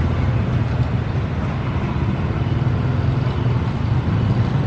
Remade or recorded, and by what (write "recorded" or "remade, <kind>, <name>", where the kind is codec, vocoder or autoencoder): recorded